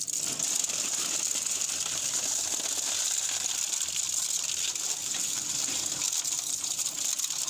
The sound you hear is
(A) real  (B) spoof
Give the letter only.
A